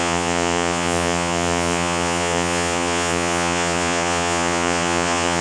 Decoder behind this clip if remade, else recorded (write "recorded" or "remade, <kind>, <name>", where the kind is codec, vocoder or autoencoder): remade, vocoder, Vocos